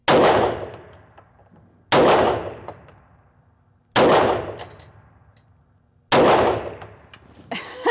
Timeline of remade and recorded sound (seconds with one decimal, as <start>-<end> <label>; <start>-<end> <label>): 0.0-7.9 recorded

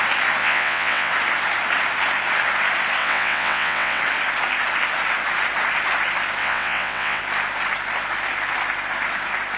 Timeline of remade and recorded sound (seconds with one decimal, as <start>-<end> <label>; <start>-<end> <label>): 0.0-0.4 recorded; 0.4-1.1 remade; 1.1-3.0 recorded; 3.0-4.0 remade; 4.0-6.4 recorded; 6.4-7.2 remade; 7.2-9.6 recorded